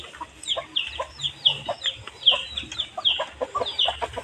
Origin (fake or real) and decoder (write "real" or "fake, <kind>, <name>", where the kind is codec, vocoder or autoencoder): real